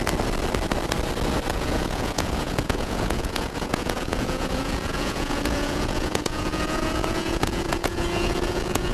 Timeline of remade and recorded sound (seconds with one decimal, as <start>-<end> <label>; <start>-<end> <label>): 0.0-1.5 recorded; 1.5-8.9 remade